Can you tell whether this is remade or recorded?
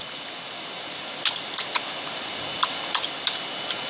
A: recorded